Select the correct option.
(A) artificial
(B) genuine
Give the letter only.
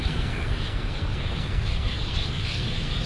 A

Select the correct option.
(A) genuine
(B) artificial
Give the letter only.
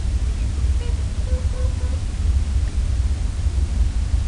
A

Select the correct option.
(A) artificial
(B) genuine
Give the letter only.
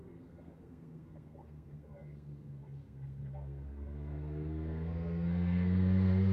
A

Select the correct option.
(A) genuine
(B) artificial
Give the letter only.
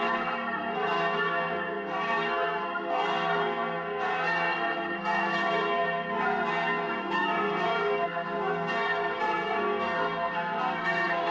B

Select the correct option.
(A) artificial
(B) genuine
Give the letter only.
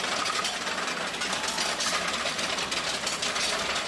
B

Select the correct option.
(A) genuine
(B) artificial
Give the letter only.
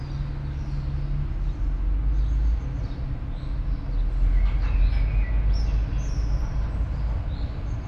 A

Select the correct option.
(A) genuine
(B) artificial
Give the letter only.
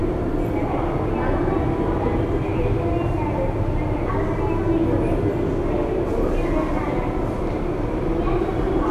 A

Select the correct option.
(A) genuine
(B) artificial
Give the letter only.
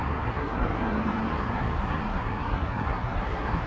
B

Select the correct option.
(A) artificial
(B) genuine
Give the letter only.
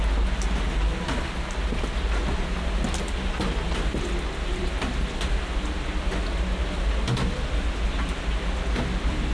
B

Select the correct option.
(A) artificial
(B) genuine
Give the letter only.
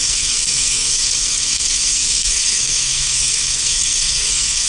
A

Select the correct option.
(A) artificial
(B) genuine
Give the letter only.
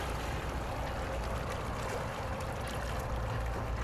B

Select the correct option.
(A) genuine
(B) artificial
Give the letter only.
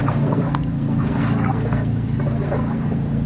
B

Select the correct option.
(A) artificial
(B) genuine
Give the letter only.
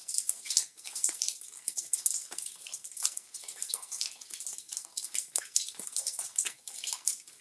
A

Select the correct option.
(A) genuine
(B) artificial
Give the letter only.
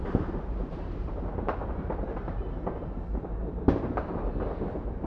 A